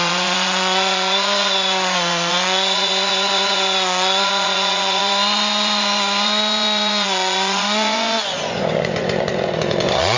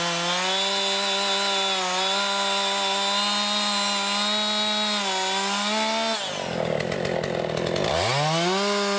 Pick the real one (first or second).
second